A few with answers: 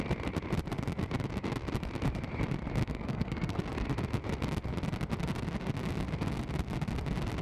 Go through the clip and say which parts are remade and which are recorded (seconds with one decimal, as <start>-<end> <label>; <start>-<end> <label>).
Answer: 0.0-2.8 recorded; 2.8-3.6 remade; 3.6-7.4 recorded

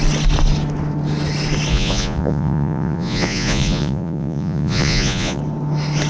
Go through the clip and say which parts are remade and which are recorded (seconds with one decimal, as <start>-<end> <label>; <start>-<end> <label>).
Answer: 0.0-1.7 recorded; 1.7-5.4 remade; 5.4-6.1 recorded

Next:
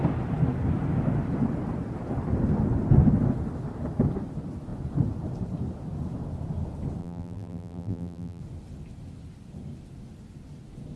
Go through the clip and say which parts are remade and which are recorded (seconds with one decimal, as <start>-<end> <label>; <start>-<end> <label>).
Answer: 0.0-7.0 recorded; 7.0-8.4 remade; 8.4-11.0 recorded